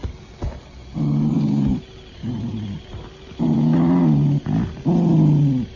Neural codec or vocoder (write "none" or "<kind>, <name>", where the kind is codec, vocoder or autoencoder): none